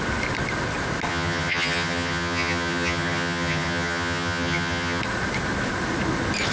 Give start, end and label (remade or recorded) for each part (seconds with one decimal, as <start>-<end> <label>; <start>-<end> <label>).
0.0-1.1 recorded; 1.1-5.0 remade; 5.0-6.5 recorded